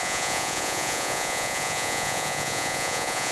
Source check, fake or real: fake